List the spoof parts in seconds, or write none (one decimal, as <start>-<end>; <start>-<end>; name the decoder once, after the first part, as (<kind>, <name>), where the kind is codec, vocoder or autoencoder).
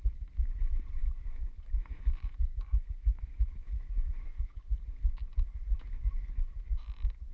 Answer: 1.0-4.6 (autoencoder, DAC-VAE)